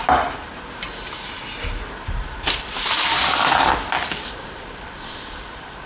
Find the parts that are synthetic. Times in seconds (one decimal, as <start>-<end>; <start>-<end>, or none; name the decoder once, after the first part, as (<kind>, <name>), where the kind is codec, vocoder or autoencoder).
0.5-4.0 (vocoder, BigVGAN v2)